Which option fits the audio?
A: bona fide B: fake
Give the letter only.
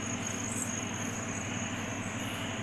A